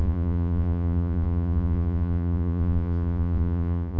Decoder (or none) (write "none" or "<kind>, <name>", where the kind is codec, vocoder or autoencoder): vocoder, Vocos